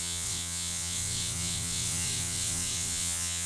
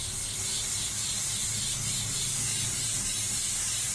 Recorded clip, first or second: second